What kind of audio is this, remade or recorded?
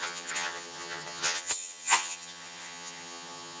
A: remade